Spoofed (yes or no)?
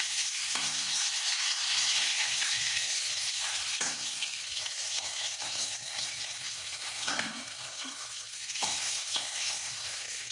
yes